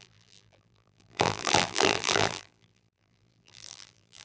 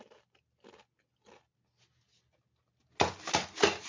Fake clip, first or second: first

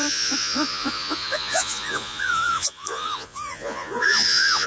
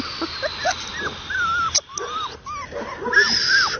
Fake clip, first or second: first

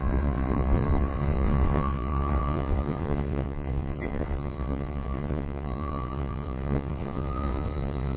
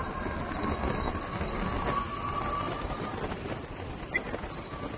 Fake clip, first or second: first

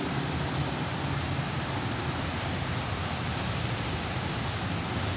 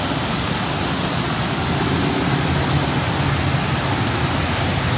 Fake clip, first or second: first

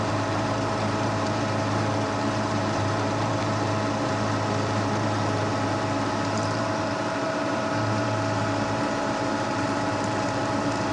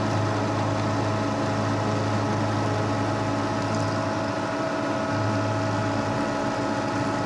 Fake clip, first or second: first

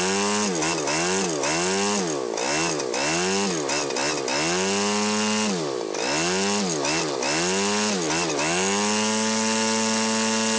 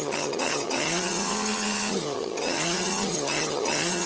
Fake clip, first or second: second